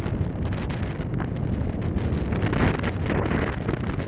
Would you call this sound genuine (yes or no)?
yes